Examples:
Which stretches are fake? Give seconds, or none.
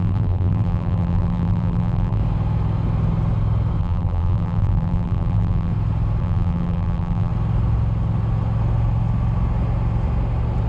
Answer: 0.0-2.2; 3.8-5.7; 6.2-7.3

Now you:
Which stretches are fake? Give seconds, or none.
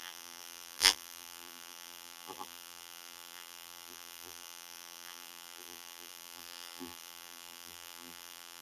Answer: 0.0-8.6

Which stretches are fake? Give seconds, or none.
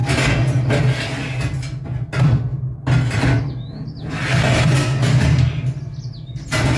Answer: none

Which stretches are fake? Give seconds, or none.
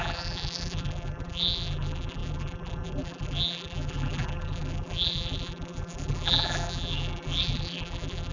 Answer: 0.0-8.3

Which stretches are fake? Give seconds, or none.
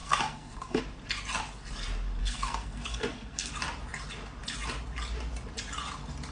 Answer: 0.0-0.8; 2.2-3.5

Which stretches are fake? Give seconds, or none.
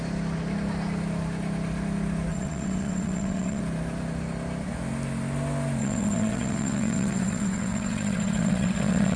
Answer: 2.3-3.6; 5.8-9.2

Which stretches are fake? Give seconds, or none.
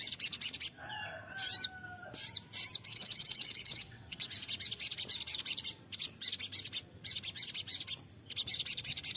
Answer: 2.9-4.3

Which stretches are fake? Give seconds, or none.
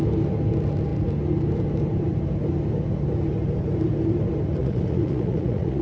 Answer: 4.6-5.8